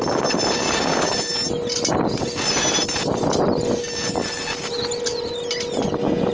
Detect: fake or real real